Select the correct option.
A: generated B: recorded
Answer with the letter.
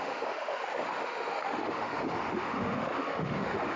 A